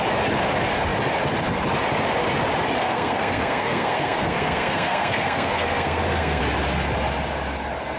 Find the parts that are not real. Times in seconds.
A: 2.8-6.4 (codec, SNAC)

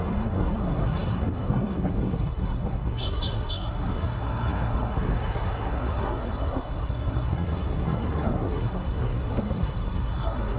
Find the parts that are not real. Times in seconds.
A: 0.0-10.6 (codec, SNAC)

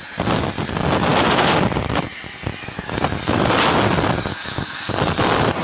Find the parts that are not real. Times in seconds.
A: 4.3-4.9 (codec, DAC)

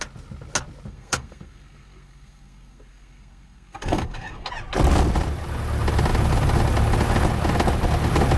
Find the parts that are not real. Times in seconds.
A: 0.9-4.5 (codec, SNAC)

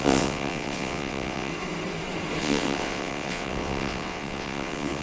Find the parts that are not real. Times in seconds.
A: 0.0-1.5 (vocoder, WaveNeXt); 2.4-5.0

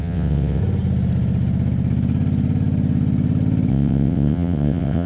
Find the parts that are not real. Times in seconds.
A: 0.0-0.6 (vocoder, WaveNeXt); 3.7-5.1